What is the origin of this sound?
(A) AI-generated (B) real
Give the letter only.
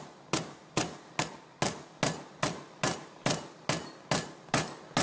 B